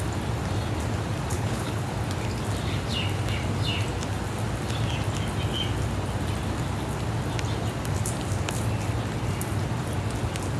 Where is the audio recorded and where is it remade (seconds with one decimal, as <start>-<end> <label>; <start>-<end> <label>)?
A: 0.0-1.3 recorded; 1.3-1.9 remade; 1.9-10.6 recorded